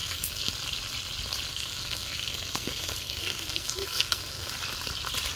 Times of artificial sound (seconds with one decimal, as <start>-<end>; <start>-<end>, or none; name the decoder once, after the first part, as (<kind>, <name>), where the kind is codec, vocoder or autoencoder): 0.0-0.5 (codec, SNAC); 1.5-4.5